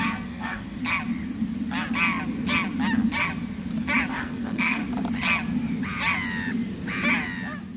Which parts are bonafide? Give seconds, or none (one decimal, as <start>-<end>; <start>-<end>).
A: 0.8-4.1; 4.8-7.8